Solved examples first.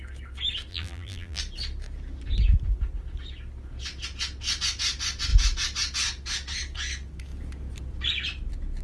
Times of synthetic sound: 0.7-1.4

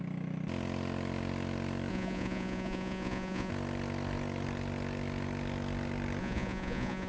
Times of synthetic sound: 1.9-3.5; 6.2-7.1

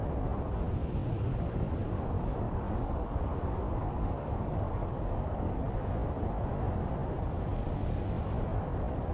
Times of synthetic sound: 1.1-5.6

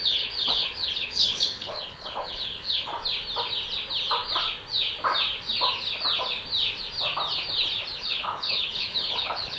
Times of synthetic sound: 0.0-2.9; 8.0-9.6

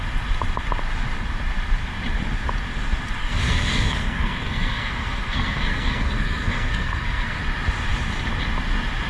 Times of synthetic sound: 3.2-7.4

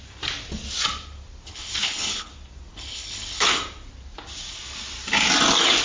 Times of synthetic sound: 1.5-2.3; 2.7-3.6

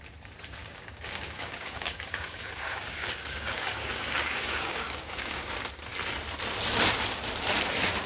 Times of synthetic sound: 0.6-5.5